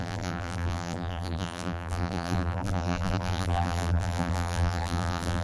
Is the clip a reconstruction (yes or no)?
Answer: yes